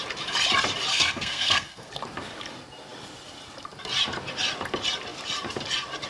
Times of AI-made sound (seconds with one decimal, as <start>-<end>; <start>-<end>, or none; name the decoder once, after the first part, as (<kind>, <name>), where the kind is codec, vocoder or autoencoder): 0.9-1.9 (codec, SNAC)